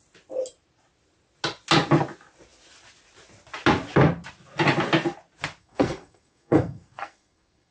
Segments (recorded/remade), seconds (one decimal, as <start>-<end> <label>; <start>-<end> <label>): 0.0-5.6 recorded; 5.6-7.7 remade